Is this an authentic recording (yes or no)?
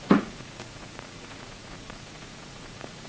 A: no